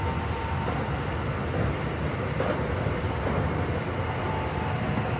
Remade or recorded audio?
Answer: recorded